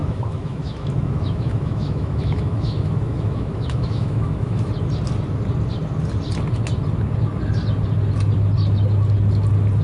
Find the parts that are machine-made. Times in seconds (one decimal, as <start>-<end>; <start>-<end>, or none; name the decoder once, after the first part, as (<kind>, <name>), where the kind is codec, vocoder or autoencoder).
0.0-4.7 (autoencoder, DAC-VAE)